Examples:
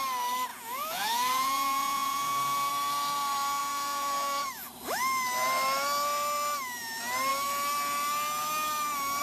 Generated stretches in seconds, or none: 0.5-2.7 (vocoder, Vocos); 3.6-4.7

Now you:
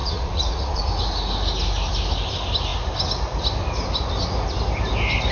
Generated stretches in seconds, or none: 0.0-0.8 (vocoder, Vocos)

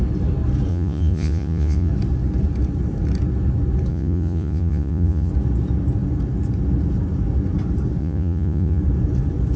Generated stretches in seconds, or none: 0.7-1.9 (vocoder, Vocos); 3.9-5.3; 8.0-8.8

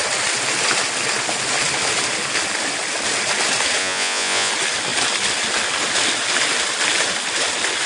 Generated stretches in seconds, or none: 3.8-4.5 (vocoder, Vocos)